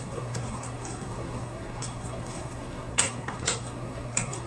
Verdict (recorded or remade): remade